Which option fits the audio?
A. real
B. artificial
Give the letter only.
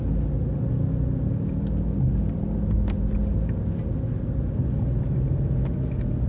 A